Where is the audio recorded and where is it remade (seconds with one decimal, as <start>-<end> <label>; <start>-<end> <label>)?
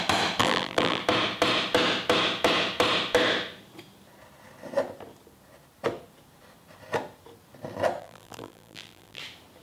0.0-0.4 recorded; 0.4-1.0 remade; 1.0-8.0 recorded; 8.0-9.2 remade; 9.2-9.6 recorded